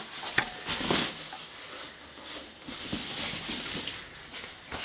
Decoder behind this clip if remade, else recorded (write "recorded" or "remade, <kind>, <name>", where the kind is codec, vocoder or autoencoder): recorded